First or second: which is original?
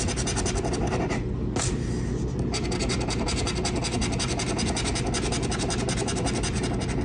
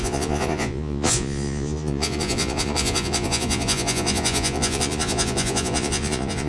first